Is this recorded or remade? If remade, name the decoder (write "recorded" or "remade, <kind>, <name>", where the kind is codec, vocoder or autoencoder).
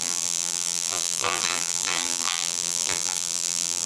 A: remade, vocoder, BigVGAN v2